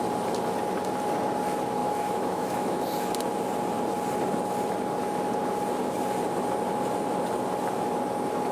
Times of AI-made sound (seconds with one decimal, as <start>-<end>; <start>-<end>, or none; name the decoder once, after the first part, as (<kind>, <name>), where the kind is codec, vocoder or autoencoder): 1.8-2.8 (autoencoder, DAC-VAE)